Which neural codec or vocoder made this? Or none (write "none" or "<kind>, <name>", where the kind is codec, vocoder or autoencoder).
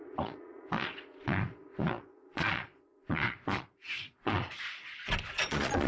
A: vocoder, Vocos